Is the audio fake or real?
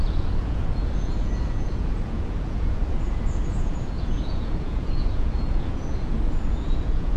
fake